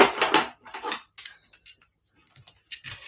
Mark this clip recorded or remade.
recorded